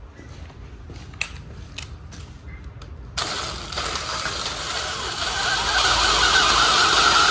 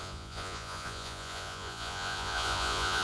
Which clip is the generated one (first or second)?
second